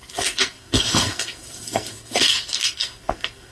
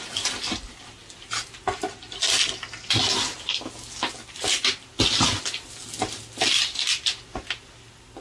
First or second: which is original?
second